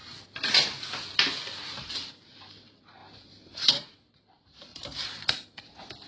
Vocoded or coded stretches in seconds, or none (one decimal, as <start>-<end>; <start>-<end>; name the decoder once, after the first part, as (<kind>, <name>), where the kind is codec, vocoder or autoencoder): 1.8-6.1 (vocoder, BigVGAN v2)

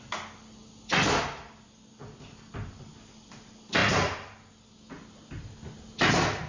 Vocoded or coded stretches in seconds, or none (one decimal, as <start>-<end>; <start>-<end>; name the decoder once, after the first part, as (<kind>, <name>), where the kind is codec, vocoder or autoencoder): none

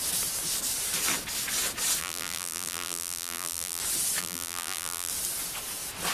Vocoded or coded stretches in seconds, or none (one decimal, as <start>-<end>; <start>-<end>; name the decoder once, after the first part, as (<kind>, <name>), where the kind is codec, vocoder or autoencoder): 2.0-3.8 (vocoder, BigVGAN v2); 4.2-5.1